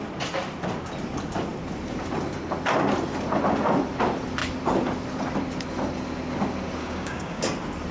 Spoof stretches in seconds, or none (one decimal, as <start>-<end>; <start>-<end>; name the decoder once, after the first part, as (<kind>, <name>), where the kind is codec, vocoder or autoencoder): 6.8-7.4 (codec, DAC)